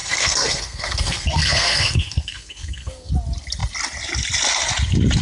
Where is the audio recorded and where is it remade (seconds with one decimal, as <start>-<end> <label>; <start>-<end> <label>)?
0.0-3.1 remade; 3.1-5.2 recorded